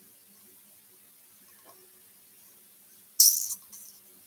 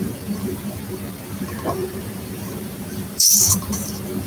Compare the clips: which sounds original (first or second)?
first